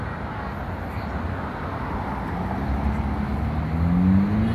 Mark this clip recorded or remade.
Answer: recorded